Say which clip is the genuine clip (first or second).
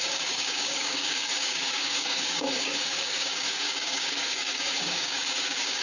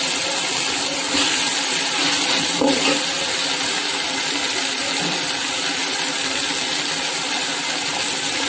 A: second